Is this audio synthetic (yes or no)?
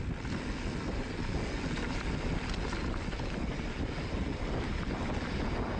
no